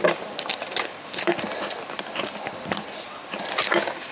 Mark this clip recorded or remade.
recorded